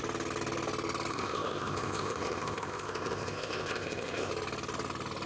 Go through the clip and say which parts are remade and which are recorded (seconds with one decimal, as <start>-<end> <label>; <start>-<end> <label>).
0.0-1.1 recorded; 1.1-4.3 remade; 4.3-5.3 recorded